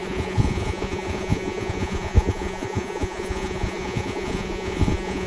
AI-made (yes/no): yes